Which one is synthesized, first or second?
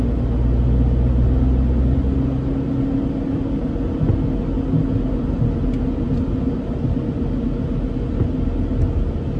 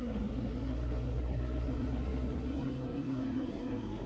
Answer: second